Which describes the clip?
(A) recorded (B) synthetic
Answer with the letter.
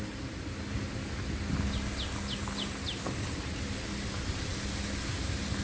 A